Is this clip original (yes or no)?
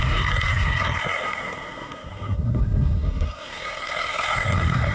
no